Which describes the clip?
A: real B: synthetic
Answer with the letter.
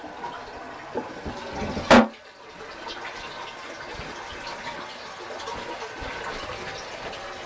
A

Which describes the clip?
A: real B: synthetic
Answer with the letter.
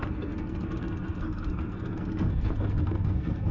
B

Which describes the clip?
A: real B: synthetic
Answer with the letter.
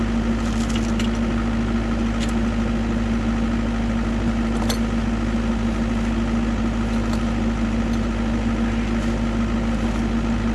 A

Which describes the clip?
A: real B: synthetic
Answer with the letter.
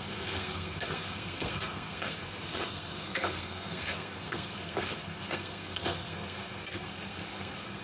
B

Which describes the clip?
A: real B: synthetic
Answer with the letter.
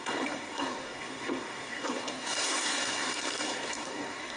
B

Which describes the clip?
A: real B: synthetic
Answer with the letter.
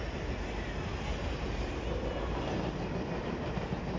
A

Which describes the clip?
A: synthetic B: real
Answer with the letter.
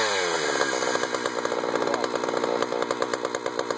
B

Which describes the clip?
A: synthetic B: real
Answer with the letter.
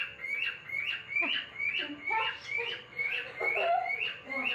B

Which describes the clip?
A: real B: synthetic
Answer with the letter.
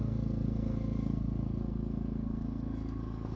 B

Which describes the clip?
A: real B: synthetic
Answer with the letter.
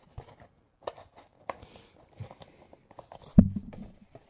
A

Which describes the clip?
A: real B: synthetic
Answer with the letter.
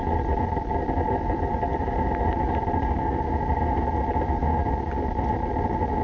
A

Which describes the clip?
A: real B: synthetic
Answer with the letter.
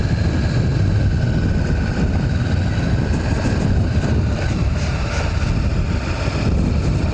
A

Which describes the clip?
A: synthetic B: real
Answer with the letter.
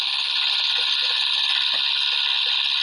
B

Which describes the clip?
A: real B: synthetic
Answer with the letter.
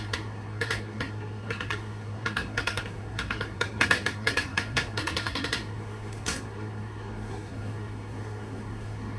B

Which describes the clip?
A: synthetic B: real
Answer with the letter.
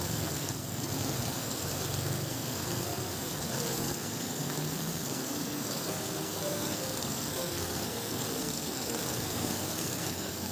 A